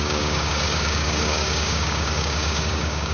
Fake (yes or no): yes